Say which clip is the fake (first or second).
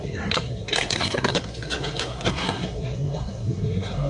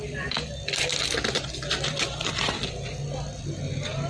first